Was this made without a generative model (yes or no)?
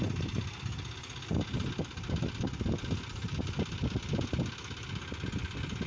yes